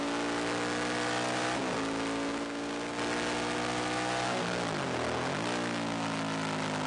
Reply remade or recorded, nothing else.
recorded